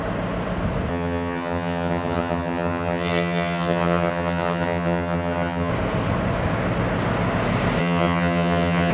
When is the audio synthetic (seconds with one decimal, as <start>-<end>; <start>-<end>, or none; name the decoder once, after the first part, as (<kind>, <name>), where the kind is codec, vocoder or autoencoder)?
0.9-5.7 (vocoder, HiFi-GAN); 7.8-8.9